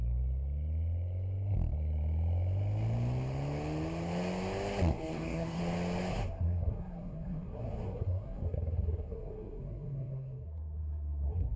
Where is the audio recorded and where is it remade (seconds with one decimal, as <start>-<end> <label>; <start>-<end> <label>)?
0.0-4.9 recorded; 4.9-5.6 remade; 5.6-6.1 recorded; 6.1-11.6 remade